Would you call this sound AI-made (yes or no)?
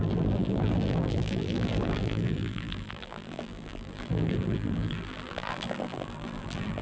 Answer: yes